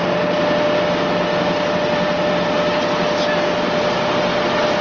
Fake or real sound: real